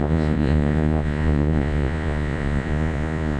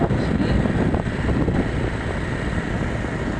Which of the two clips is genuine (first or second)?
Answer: second